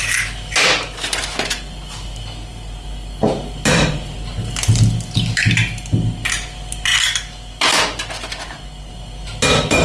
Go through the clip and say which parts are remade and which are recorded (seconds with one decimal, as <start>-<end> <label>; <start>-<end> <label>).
0.0-9.8 recorded